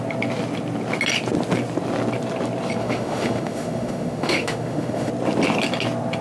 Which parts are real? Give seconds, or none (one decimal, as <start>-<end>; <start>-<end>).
0.0-2.8; 5.1-6.2